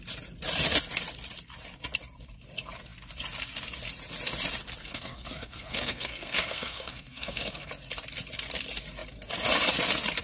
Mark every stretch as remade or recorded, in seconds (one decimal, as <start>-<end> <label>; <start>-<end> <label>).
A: 0.0-4.8 recorded; 4.8-7.7 remade; 7.7-10.2 recorded